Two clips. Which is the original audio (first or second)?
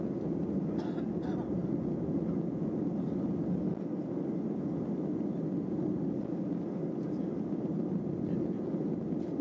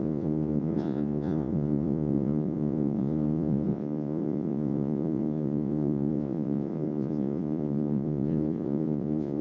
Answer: first